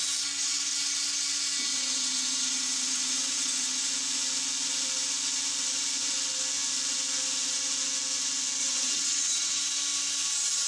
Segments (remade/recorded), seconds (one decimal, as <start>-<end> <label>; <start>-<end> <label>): 0.0-1.7 recorded; 1.7-3.9 remade; 3.9-8.6 recorded; 8.6-9.6 remade; 9.6-10.7 recorded